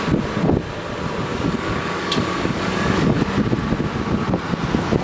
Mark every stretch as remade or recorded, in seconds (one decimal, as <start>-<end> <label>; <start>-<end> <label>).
0.0-1.3 recorded; 1.3-3.2 remade; 3.2-5.0 recorded